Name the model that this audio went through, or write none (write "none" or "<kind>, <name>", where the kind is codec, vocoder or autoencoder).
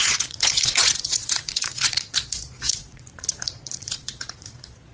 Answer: vocoder, Vocos